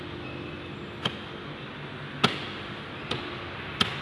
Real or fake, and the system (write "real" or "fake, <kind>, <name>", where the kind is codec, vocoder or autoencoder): real